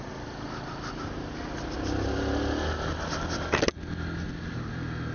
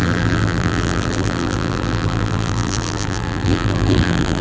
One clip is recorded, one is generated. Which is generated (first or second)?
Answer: second